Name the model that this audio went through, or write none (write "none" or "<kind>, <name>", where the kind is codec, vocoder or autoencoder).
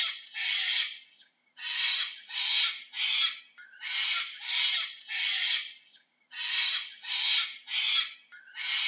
none